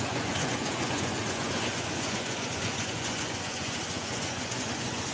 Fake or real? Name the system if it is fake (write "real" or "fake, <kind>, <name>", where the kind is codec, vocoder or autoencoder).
fake, vocoder, Vocos